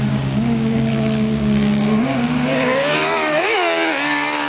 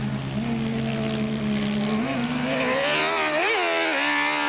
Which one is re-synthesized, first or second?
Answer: first